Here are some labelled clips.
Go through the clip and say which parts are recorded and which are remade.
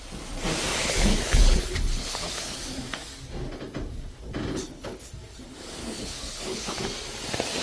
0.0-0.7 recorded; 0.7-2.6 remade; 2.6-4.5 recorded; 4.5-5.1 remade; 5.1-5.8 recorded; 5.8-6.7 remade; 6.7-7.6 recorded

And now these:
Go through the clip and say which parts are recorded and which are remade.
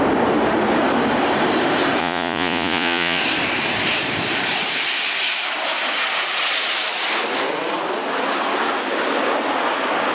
0.0-2.0 recorded; 2.0-3.2 remade; 3.2-10.1 recorded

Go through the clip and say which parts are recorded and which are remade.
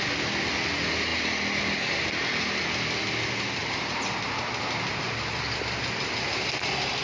0.0-3.6 recorded; 3.6-4.4 remade; 4.4-7.0 recorded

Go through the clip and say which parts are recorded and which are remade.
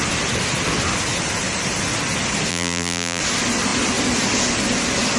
0.0-2.5 recorded; 2.5-3.2 remade; 3.2-5.2 recorded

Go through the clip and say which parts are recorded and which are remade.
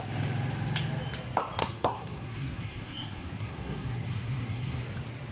0.0-1.6 recorded; 1.6-4.8 remade; 4.8-5.3 recorded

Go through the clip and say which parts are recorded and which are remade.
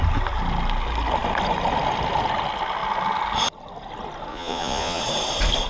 0.0-4.3 recorded; 4.3-5.0 remade; 5.0-5.7 recorded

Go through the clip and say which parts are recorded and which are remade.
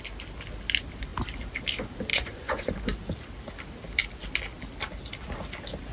0.0-2.1 recorded; 2.1-2.7 remade; 2.7-5.9 recorded